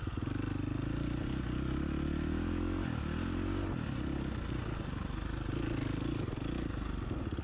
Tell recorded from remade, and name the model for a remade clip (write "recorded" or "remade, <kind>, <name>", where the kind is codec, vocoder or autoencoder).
recorded